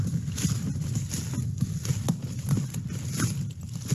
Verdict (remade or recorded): recorded